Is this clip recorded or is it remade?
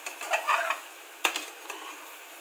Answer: recorded